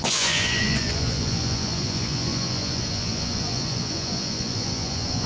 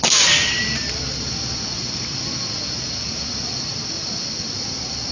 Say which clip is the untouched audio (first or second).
second